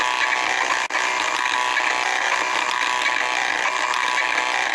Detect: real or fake real